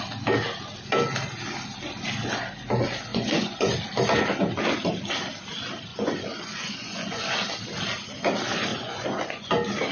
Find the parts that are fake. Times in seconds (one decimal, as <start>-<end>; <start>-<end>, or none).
3.1-3.7; 5.9-7.2; 8.7-9.5